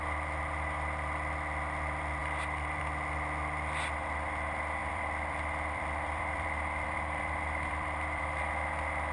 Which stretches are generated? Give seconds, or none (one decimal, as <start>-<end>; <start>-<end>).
2.2-2.8; 4.8-8.5